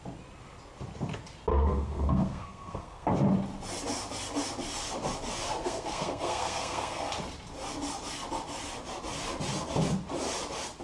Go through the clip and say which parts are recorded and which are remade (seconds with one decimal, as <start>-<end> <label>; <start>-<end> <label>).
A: 0.0-1.5 recorded; 1.5-3.1 remade; 3.1-5.6 recorded; 5.6-7.1 remade; 7.1-10.8 recorded